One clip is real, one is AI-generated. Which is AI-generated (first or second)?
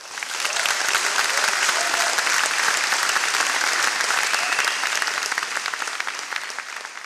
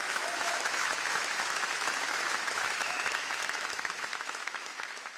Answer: second